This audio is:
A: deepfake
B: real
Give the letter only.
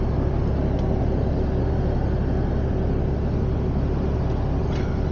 B